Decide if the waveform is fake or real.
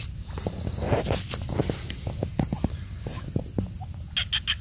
real